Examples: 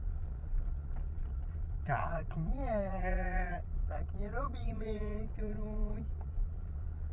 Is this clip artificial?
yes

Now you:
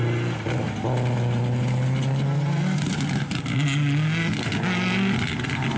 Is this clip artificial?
no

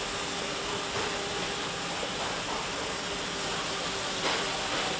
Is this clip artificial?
no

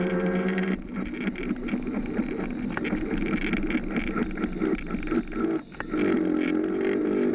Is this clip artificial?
no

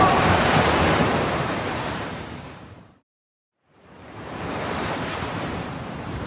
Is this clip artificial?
yes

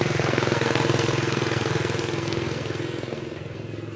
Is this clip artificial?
yes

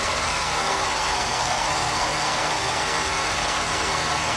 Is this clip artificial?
yes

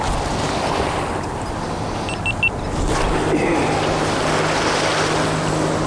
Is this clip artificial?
no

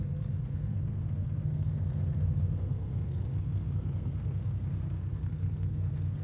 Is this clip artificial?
yes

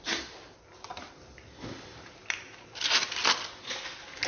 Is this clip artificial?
no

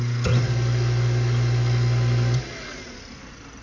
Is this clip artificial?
no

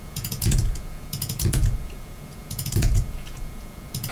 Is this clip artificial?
yes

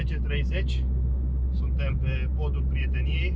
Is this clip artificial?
no